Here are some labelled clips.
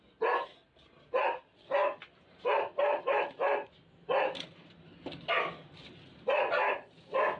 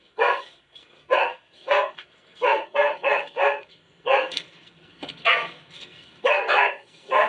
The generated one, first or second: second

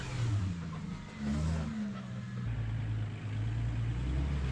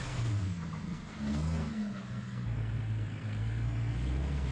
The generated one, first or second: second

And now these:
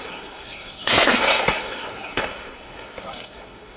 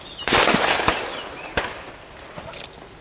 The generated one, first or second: first